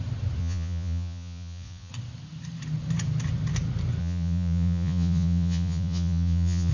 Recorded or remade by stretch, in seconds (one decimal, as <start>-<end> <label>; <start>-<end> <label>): 0.0-0.4 recorded; 0.4-1.9 remade; 1.9-4.0 recorded; 4.0-6.7 remade